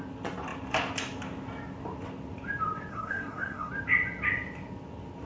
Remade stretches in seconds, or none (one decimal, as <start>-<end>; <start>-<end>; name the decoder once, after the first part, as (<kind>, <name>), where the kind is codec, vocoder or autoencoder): 2.9-3.7 (codec, SNAC)